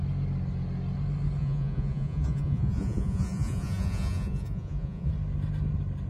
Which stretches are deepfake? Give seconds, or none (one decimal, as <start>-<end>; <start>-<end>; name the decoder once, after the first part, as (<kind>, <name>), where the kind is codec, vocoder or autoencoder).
1.4-5.1 (vocoder, Vocos)